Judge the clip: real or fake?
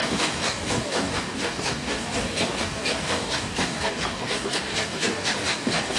fake